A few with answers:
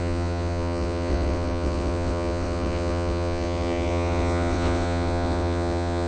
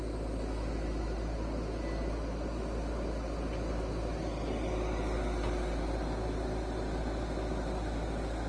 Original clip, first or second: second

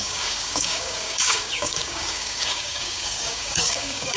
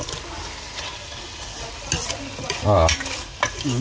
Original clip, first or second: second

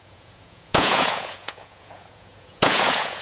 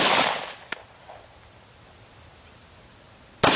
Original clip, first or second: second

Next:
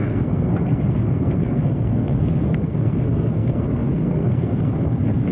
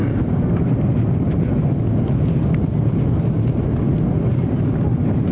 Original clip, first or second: second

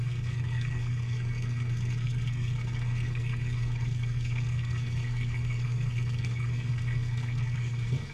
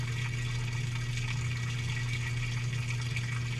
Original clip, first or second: second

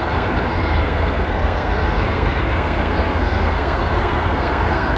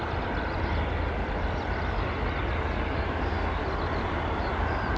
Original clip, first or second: second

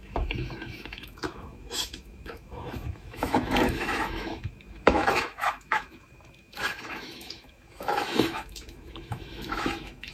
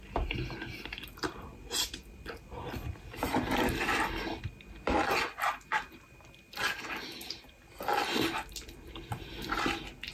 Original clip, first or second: second